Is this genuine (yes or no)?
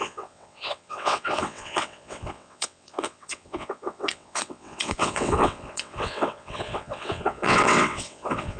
no